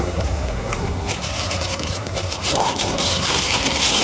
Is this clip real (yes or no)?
no